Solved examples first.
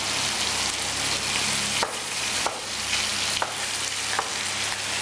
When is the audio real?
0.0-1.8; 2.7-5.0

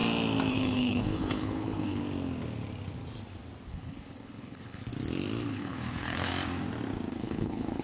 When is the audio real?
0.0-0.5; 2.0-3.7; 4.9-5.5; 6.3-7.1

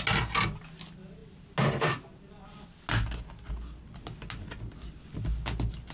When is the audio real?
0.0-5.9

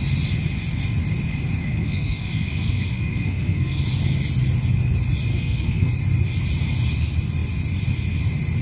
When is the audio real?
0.0-1.6; 3.8-5.3; 5.9-8.6

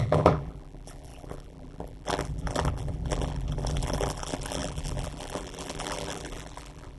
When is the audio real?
none

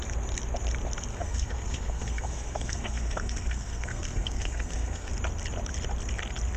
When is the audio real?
0.0-1.1; 5.1-6.6

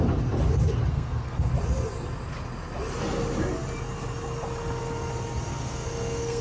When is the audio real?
0.0-0.9; 1.5-5.5

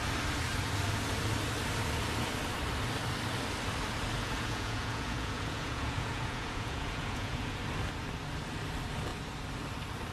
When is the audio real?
0.0-4.2; 7.6-10.1